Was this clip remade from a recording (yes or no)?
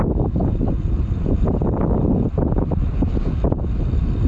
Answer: no